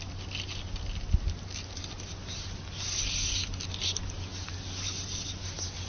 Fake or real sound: real